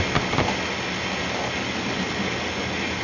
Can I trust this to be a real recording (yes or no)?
yes